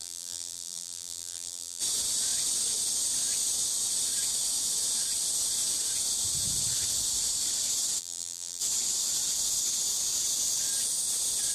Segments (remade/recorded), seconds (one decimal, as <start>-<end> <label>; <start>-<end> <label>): 0.0-1.8 remade; 1.8-8.0 recorded; 8.0-8.6 remade; 8.6-11.5 recorded